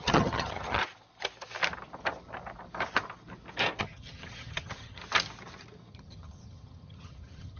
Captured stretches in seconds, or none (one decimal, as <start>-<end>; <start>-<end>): 0.8-3.8; 5.0-5.9